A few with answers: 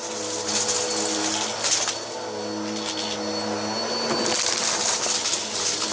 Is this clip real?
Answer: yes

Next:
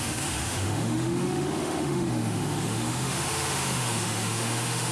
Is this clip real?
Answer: no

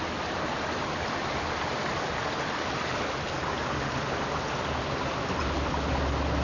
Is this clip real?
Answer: yes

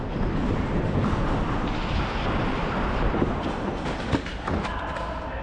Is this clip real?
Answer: yes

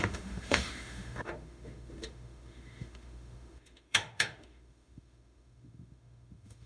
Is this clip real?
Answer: no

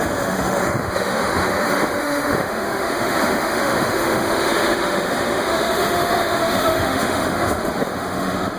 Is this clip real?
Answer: no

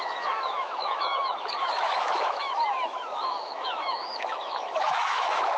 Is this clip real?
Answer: no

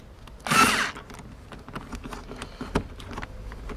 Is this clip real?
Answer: yes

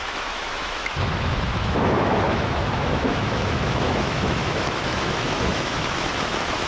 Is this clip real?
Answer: no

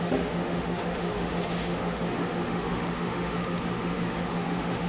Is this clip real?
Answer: no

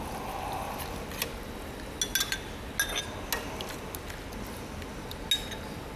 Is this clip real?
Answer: yes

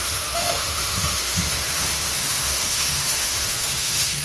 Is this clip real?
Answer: no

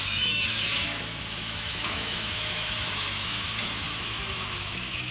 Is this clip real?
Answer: no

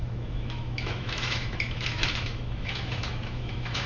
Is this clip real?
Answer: no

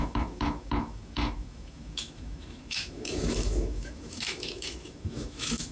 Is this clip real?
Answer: no